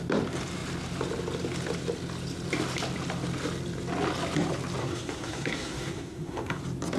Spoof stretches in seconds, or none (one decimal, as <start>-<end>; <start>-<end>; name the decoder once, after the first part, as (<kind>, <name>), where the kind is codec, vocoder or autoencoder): 4.8-6.6 (codec, SNAC)